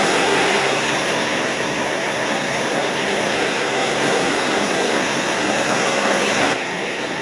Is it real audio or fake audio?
fake